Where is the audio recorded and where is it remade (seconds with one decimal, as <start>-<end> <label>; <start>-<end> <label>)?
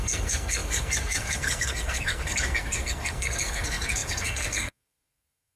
0.0-5.6 remade